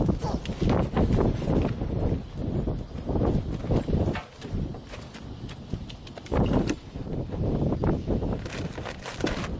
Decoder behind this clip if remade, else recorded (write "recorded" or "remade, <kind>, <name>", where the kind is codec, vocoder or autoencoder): recorded